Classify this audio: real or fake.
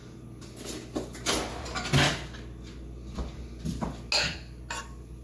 real